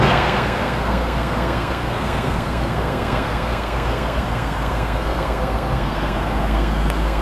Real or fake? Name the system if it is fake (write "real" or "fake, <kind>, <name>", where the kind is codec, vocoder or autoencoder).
fake, codec, SNAC